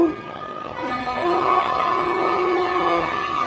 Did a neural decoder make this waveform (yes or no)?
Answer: yes